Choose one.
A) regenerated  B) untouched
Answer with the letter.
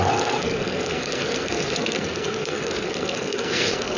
A